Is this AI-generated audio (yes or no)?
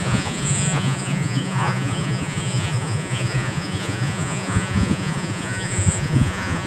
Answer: yes